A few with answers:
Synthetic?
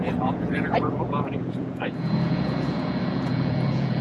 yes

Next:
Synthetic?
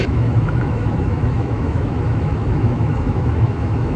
yes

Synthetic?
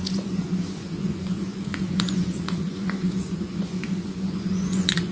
yes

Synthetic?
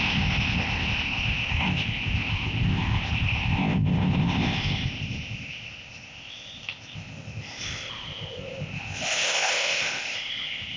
yes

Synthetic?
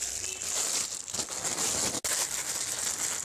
no